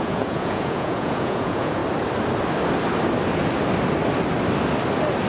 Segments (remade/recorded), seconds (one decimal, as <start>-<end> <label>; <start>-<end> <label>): 0.0-1.8 remade; 1.8-5.3 recorded